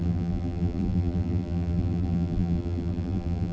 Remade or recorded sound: remade